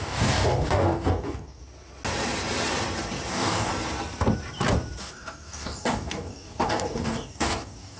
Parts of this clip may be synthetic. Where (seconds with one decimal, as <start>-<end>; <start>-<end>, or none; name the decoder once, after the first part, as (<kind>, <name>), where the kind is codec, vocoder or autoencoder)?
0.0-1.6 (codec, DAC); 3.3-3.7; 5.0-8.0